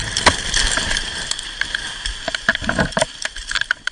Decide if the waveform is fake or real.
real